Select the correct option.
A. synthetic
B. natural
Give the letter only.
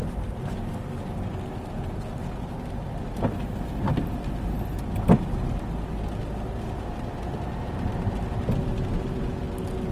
B